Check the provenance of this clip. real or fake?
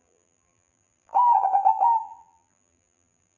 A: fake